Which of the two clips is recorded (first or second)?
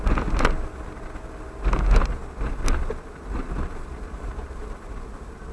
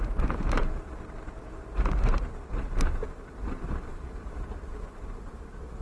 first